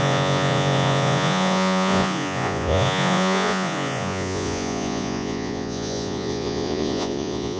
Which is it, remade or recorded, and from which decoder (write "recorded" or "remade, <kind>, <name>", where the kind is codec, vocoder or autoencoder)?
remade, vocoder, Vocos